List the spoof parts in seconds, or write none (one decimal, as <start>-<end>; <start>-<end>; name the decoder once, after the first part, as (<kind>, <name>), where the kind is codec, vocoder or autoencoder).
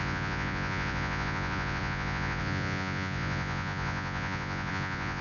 0.0-5.2 (vocoder, Vocos)